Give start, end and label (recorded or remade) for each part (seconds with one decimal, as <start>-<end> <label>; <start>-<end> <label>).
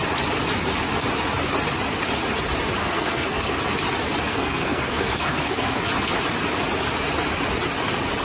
0.0-2.8 recorded; 2.8-3.6 remade; 3.6-4.3 recorded; 4.3-5.8 remade; 5.8-8.2 recorded